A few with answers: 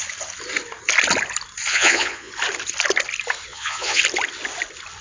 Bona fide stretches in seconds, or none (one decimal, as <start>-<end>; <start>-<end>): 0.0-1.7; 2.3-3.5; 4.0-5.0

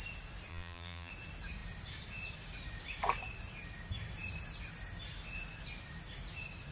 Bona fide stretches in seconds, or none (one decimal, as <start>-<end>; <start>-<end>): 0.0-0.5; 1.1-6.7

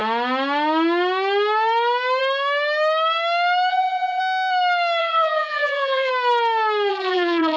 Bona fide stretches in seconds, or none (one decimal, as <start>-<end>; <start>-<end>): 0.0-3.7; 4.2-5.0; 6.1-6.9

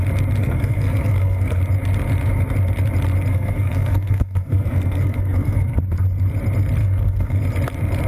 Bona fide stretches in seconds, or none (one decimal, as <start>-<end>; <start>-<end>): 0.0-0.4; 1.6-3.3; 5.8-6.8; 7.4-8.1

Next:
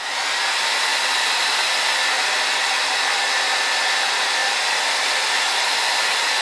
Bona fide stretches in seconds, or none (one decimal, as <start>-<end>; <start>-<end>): 0.0-6.4